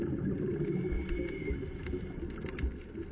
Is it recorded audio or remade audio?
recorded